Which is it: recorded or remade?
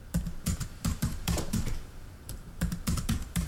remade